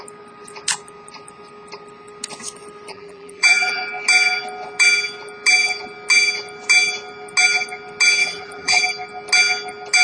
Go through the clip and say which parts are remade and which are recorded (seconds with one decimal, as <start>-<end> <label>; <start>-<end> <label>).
0.0-2.9 recorded; 2.9-3.8 remade; 3.8-8.2 recorded; 8.2-8.8 remade; 8.8-10.0 recorded